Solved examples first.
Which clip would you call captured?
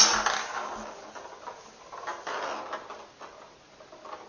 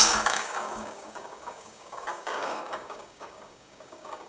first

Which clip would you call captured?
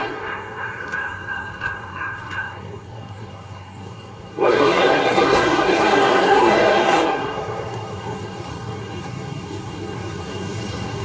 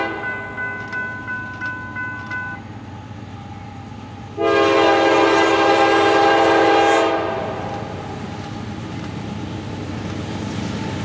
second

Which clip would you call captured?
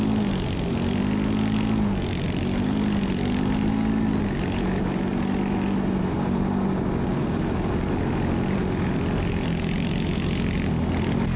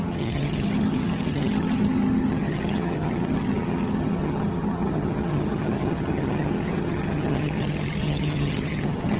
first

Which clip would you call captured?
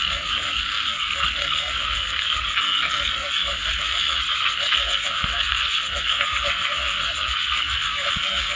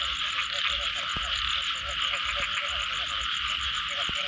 second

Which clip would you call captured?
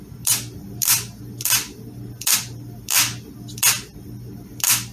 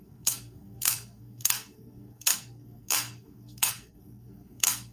first